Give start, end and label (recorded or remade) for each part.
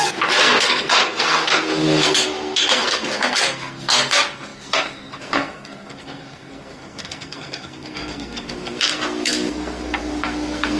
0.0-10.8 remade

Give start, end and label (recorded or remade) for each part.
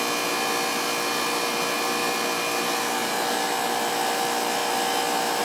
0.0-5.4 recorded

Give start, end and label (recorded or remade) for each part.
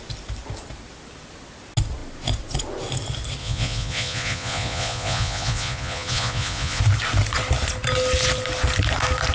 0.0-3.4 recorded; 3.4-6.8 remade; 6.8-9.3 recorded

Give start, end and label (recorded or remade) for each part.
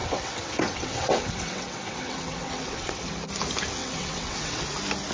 0.0-3.1 remade; 3.1-3.8 recorded; 3.8-4.6 remade; 4.6-5.1 recorded